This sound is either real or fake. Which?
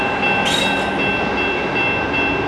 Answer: real